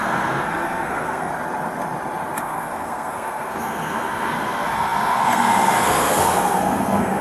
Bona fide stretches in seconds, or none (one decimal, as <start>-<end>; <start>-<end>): 1.3-2.4

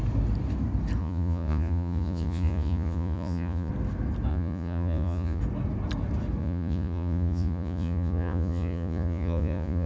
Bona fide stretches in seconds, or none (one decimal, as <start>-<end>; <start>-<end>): 0.0-1.0; 3.7-4.3; 5.4-6.4

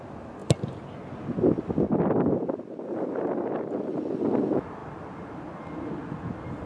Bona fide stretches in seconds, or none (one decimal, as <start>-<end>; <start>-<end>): 0.0-6.7

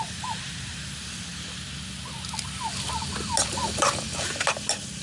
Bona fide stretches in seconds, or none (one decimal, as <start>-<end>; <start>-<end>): 0.0-5.0

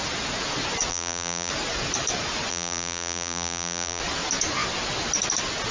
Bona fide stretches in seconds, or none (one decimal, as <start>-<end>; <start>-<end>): 0.0-0.9; 1.5-2.5; 4.0-5.7

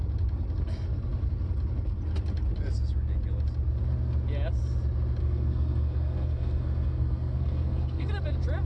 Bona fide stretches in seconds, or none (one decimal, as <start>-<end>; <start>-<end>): 0.0-5.2; 8.1-8.7